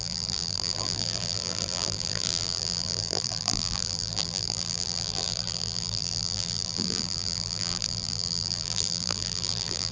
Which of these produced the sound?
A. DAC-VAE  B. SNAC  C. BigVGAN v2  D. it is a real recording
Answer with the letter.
C